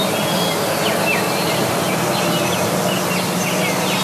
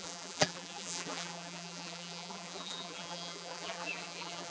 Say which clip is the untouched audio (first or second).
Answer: first